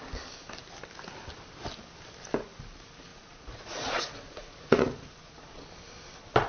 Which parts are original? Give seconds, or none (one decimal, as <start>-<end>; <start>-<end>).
0.0-3.1; 5.6-6.5